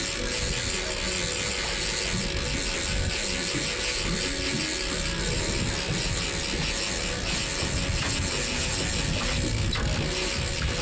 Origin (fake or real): real